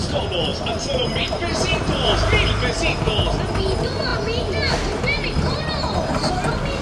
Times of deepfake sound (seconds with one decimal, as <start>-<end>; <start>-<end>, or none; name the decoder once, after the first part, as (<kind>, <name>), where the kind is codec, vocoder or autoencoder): 0.5-1.8 (vocoder, BigVGAN v2)